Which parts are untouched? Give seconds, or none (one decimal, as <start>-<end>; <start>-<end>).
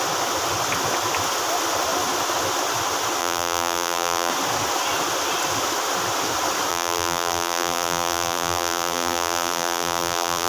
0.0-3.2; 4.3-6.7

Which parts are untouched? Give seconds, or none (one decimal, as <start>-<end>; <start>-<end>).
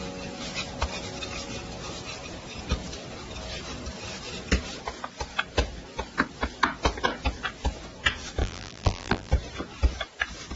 0.0-8.4; 9.3-10.6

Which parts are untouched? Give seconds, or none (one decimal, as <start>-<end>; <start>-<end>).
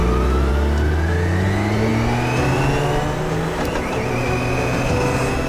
0.0-5.5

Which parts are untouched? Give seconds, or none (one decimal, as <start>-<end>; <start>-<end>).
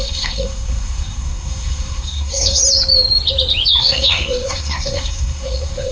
2.6-3.8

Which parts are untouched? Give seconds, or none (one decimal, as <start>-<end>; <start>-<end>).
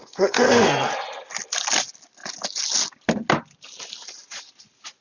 0.9-5.0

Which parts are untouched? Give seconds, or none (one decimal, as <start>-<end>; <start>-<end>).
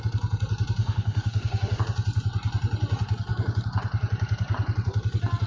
0.0-0.8; 1.8-5.5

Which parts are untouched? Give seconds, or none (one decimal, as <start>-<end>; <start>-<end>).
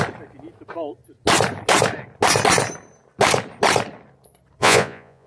0.0-4.6